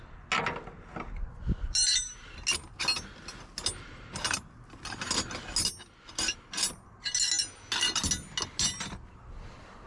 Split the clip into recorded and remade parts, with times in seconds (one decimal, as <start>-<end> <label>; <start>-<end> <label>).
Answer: 0.0-9.9 recorded